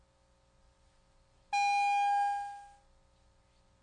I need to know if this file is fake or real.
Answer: real